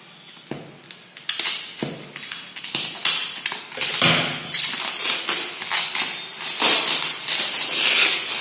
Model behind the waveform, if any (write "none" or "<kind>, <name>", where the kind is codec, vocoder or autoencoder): none